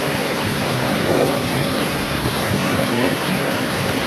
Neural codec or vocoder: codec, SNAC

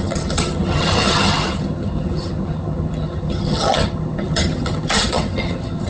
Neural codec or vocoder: vocoder, HiFi-GAN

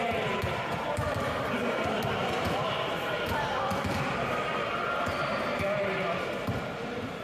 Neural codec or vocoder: none